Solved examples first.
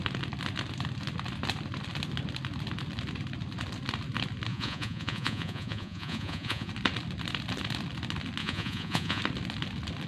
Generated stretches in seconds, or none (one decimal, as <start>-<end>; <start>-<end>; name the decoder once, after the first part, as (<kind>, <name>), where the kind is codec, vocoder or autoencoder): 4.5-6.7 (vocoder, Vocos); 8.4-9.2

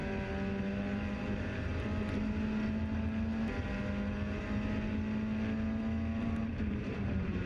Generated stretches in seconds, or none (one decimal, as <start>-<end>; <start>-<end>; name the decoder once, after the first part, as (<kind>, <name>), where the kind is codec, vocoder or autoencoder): 0.6-1.7 (vocoder, BigVGAN v2); 6.2-7.5

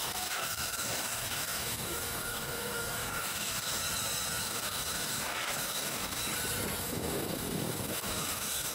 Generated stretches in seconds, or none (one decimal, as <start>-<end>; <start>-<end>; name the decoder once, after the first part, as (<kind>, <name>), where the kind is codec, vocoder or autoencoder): 0.0-3.8 (codec, DAC); 4.4-6.2; 6.8-8.7

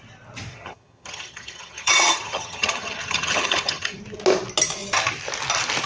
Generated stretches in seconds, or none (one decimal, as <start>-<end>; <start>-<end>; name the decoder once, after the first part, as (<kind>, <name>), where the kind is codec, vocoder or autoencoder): 0.5-4.0 (vocoder, HiFi-GAN)